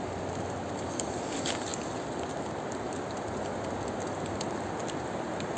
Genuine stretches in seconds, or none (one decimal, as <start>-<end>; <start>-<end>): 0.0-5.6

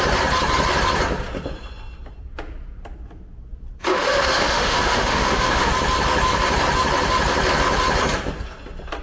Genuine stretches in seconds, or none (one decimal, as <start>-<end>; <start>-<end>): 0.0-3.9; 5.7-9.0

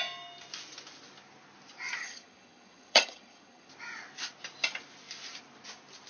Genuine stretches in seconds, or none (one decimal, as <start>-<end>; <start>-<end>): 0.0-2.0; 3.7-6.1

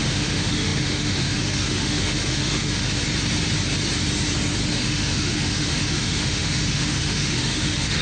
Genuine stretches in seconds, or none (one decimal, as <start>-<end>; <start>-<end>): 3.0-4.7

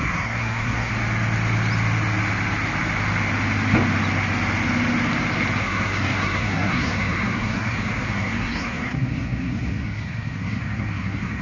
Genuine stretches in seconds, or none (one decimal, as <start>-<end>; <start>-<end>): 0.9-5.6

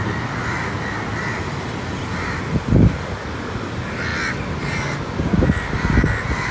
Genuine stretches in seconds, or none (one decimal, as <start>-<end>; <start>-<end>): 0.0-6.5

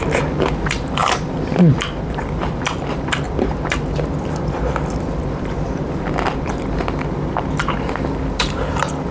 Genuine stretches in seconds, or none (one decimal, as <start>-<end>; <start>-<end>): none

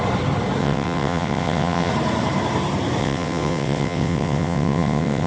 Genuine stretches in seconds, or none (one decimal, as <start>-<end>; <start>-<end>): 0.0-0.6; 1.9-3.0